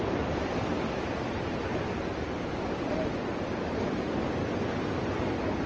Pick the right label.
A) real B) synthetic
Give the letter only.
A